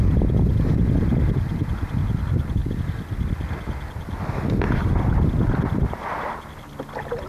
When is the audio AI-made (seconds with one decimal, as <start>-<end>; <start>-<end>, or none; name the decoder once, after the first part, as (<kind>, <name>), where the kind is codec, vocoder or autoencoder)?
none